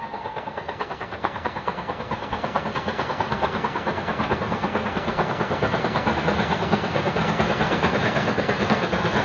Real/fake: fake